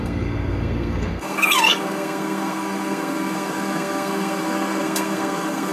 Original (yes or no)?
no